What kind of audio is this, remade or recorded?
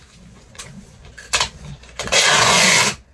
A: remade